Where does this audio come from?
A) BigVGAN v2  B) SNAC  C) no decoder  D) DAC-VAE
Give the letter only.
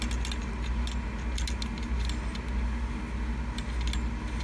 C